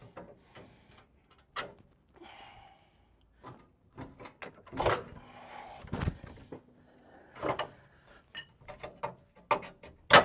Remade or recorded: recorded